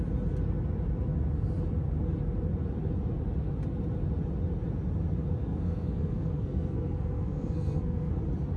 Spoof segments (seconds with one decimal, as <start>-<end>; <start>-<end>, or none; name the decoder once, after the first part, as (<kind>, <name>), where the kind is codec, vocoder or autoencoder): 5.4-8.1 (codec, SNAC)